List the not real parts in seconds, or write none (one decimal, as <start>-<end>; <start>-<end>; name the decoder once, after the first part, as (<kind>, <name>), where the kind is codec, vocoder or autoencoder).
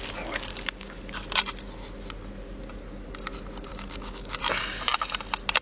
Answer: 0.5-1.0 (codec, DAC); 3.7-4.4